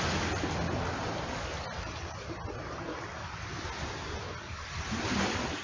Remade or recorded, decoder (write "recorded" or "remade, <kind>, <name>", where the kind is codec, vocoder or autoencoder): recorded